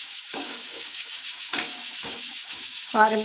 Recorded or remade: remade